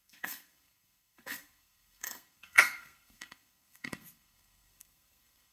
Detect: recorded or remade remade